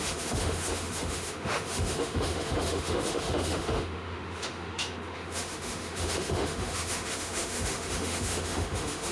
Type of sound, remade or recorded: remade